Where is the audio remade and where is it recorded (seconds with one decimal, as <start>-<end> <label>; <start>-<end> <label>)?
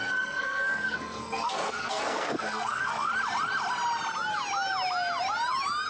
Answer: 0.0-3.1 remade; 3.1-5.9 recorded